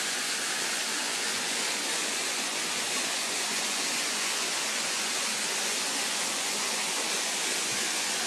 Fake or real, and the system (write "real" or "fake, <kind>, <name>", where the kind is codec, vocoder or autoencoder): fake, vocoder, Vocos